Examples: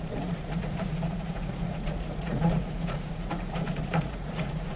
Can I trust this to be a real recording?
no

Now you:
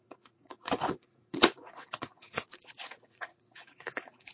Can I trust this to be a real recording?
no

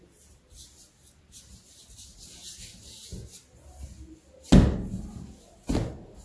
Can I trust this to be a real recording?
yes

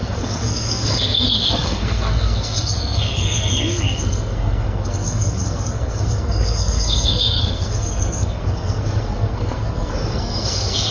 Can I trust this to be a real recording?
no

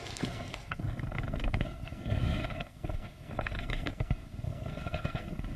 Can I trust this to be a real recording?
no